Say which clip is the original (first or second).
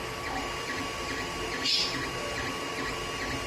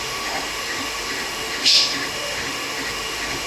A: first